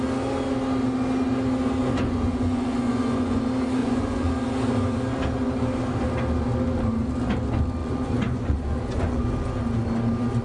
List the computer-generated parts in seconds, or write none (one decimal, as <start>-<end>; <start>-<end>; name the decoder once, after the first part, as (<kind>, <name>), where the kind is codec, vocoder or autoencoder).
1.8-3.4 (vocoder, Vocos); 3.8-4.3; 7.8-9.2